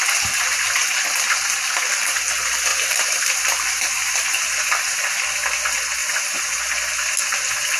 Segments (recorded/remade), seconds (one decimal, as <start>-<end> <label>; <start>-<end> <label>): 0.0-2.7 recorded; 2.7-4.4 remade; 4.4-6.0 recorded; 6.0-6.6 remade; 6.6-7.8 recorded